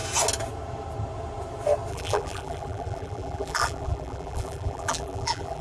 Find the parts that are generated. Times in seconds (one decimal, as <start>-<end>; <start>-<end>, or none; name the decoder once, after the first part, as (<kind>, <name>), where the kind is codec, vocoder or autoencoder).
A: 1.9-5.6 (vocoder, BigVGAN v2)